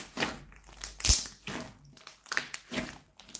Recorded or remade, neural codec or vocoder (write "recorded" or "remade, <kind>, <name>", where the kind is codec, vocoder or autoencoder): recorded